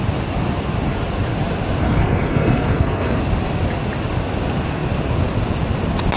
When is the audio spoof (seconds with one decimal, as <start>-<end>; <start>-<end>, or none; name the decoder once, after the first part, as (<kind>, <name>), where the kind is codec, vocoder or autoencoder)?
1.8-3.2 (codec, SNAC)